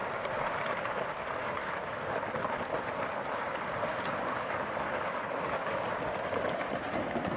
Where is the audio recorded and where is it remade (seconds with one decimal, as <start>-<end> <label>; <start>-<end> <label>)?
0.0-1.4 recorded; 1.4-2.3 remade; 2.3-3.9 recorded; 3.9-5.8 remade; 5.8-7.4 recorded